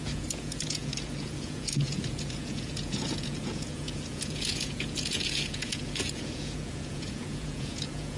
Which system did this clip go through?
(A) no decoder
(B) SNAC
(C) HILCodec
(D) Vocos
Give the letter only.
D